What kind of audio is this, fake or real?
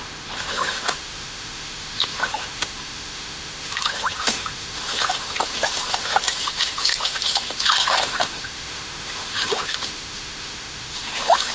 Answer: fake